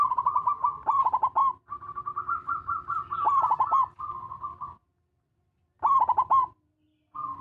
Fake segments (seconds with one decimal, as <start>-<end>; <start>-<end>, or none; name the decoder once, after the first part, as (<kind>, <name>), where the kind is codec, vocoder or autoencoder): none

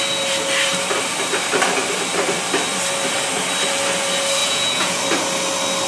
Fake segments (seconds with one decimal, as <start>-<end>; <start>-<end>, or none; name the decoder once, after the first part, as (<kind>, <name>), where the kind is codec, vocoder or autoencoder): 4.4-5.0 (vocoder, Vocos)

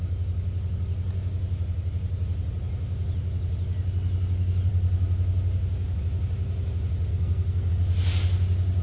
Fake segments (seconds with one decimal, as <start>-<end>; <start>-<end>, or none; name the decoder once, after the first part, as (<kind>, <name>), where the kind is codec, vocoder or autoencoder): 7.1-7.7 (codec, SNAC)

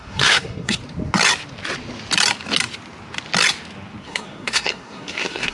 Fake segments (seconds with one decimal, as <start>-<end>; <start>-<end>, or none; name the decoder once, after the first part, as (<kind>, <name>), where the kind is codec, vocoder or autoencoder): 0.0-0.8 (codec, SNAC); 4.0-5.5

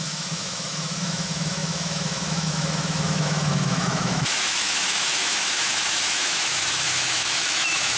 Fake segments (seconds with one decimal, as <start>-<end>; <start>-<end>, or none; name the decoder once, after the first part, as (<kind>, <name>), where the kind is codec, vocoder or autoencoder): 0.0-8.0 (autoencoder, DAC-VAE)